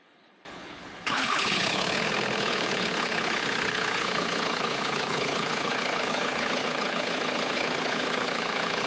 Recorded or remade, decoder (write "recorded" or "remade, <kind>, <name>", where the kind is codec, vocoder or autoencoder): remade, codec, HILCodec